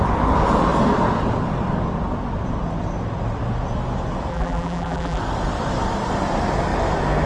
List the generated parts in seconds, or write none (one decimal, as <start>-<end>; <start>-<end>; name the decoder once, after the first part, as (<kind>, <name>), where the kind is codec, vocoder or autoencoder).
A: 4.3-5.2 (vocoder, BigVGAN v2)